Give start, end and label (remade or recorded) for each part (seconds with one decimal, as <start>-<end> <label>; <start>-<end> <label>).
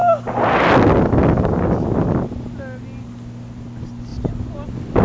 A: 0.0-5.0 recorded